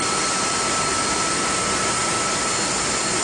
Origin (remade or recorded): recorded